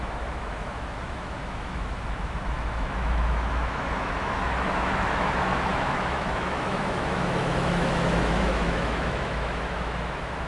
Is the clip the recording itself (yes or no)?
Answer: no